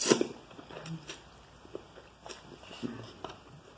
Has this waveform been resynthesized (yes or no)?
no